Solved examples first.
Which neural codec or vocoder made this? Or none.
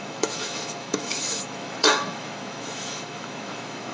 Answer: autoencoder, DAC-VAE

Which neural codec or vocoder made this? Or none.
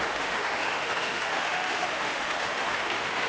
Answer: autoencoder, DAC-VAE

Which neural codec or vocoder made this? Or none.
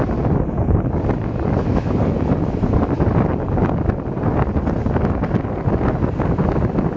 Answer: none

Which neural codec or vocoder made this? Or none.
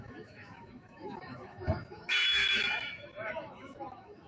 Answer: autoencoder, DAC-VAE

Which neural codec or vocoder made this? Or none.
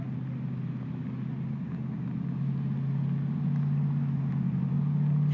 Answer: none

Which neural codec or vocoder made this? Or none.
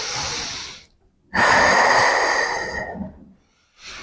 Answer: none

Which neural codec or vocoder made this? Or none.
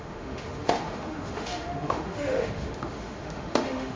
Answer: autoencoder, DAC-VAE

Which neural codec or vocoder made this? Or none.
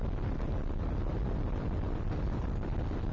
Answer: none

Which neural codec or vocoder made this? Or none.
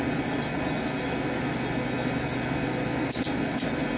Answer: none